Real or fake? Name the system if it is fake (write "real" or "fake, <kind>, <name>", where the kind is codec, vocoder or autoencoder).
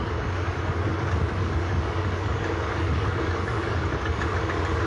fake, codec, DAC